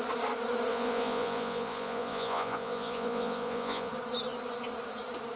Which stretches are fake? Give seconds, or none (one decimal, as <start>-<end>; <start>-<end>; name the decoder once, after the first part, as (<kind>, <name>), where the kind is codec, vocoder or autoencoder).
0.7-3.9 (vocoder, Vocos)